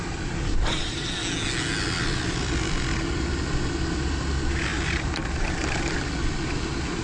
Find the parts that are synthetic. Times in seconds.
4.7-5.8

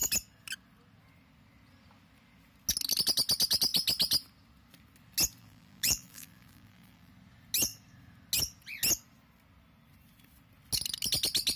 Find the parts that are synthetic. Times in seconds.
5.4-7.1

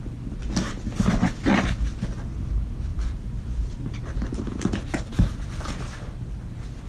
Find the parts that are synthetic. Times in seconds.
2.9-5.3

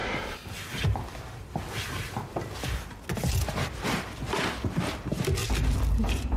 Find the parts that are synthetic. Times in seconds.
5.4-6.4

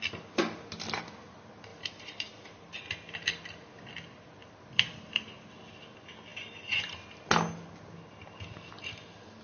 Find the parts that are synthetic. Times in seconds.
1.7-2.8; 4.4-5.5; 6.3-6.9

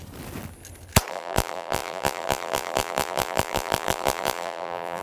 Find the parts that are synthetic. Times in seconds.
1.1-5.0

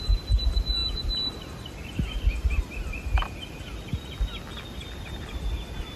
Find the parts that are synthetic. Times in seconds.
none